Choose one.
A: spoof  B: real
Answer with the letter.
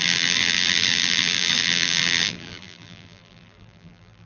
A